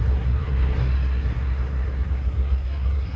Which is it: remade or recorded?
remade